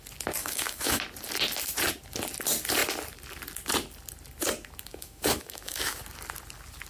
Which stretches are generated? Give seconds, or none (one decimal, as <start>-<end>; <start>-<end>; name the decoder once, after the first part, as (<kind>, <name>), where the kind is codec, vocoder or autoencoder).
0.4-1.0 (autoencoder, DAC-VAE); 4.9-6.0